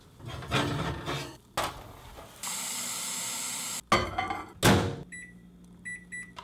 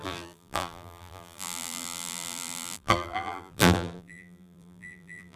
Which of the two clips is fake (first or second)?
second